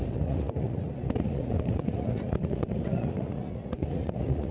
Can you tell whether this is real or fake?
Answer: fake